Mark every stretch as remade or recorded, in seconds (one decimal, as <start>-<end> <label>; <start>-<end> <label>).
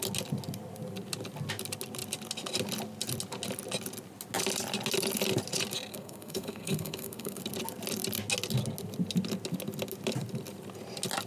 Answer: 0.0-5.9 recorded; 5.9-7.4 remade; 7.4-11.3 recorded